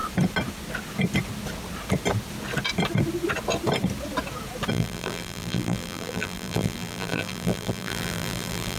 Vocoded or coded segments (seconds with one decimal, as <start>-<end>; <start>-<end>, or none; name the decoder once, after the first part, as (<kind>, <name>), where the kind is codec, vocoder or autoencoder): 4.7-8.8 (vocoder, BigVGAN v2)